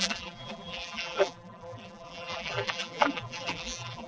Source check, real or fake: fake